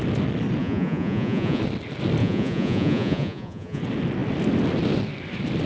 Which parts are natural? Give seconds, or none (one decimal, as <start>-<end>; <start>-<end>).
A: 0.0-0.6; 1.6-2.2; 3.8-5.7

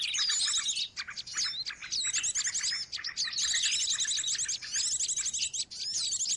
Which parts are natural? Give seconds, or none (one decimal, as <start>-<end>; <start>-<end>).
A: 0.0-6.4

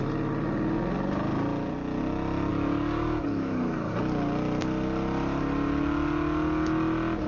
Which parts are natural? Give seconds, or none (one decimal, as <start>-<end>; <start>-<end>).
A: 0.0-2.5; 3.9-7.3

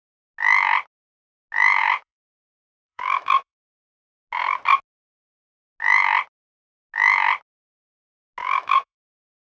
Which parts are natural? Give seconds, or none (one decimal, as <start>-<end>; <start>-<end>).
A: 0.0-1.8; 3.7-8.4; 9.1-9.5